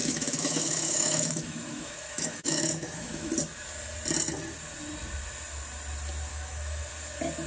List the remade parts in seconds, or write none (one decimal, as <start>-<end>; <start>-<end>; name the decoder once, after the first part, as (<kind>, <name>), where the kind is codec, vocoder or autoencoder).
0.0-3.3 (autoencoder, DAC-VAE); 6.3-6.9